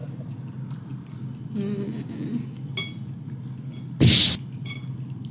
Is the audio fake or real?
real